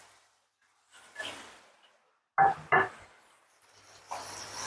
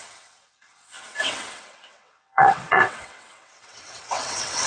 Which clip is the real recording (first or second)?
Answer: first